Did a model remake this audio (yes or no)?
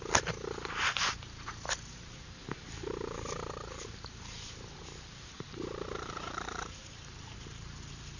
yes